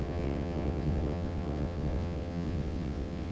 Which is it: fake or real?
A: fake